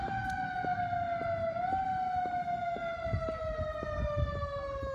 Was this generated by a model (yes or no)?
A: no